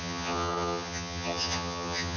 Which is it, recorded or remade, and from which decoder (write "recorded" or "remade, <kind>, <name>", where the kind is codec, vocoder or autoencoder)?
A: remade, vocoder, HiFi-GAN